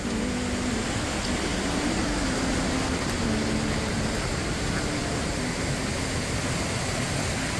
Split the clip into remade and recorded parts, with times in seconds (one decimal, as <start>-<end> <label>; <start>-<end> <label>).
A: 0.0-7.6 recorded